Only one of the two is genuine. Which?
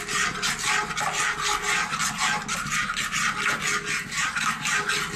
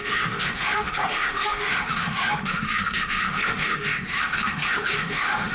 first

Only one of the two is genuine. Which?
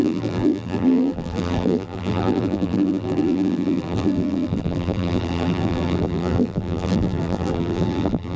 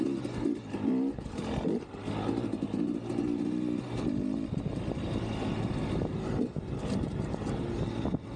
second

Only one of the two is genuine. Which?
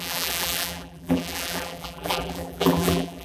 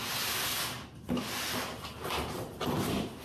second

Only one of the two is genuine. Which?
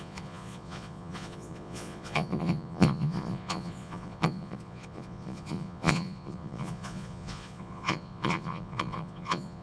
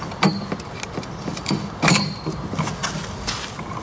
second